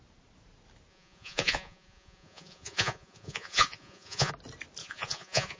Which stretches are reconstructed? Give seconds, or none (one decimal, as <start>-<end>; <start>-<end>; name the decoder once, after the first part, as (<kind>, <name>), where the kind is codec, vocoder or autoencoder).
0.9-4.3 (vocoder, Vocos); 4.8-5.6